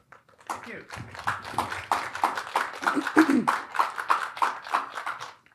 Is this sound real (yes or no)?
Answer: yes